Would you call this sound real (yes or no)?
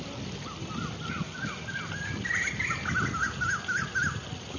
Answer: yes